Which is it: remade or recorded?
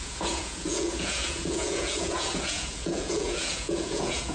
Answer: remade